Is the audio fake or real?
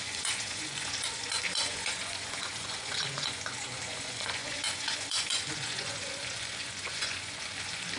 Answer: fake